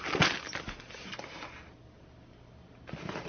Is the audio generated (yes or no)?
no